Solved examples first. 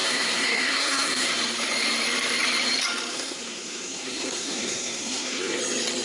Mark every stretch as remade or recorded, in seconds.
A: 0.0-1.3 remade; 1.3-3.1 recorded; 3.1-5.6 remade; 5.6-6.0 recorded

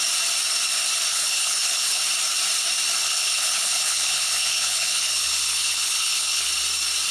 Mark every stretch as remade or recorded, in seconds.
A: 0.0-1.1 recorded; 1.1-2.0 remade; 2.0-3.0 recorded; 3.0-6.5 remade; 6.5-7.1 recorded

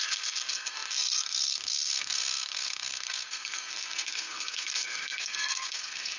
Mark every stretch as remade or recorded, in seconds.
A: 0.0-6.2 remade